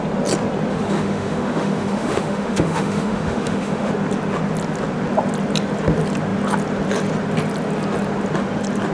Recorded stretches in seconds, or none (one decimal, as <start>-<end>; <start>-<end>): 0.0-0.7; 3.9-8.9